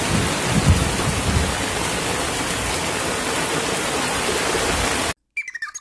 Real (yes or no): yes